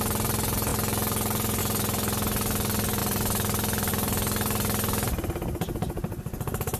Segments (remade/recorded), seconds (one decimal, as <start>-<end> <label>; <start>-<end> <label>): 0.0-6.8 recorded